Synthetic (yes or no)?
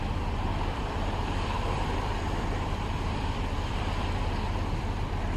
yes